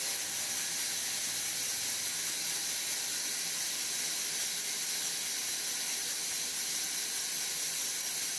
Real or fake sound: real